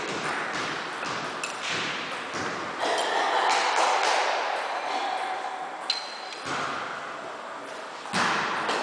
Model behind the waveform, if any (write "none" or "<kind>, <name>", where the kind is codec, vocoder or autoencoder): none